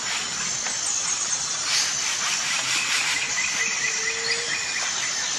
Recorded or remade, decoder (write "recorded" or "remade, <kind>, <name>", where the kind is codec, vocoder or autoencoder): recorded